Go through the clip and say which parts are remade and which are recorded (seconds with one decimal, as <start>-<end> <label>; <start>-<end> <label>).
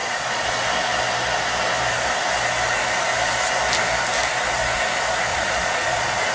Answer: 0.0-0.5 remade; 0.5-5.3 recorded; 5.3-6.3 remade